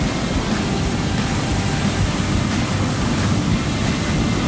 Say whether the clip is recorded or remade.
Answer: recorded